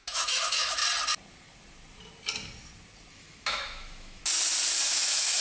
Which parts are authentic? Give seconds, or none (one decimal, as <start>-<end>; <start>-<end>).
0.8-3.1; 4.2-4.8

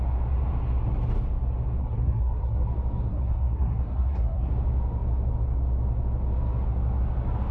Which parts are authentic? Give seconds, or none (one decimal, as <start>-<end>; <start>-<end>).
0.0-1.8; 2.7-3.1; 4.5-7.5

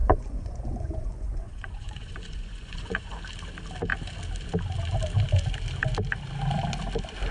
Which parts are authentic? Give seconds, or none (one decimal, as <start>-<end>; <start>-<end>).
3.2-7.3

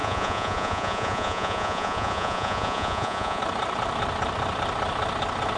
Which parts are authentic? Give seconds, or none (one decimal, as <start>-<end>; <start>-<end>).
3.4-5.6

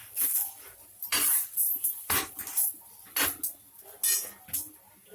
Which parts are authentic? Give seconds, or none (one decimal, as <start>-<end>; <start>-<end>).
0.0-0.9; 2.8-5.1

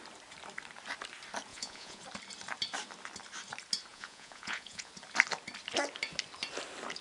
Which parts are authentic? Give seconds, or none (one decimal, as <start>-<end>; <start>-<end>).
0.0-1.5; 2.0-3.9; 4.9-7.0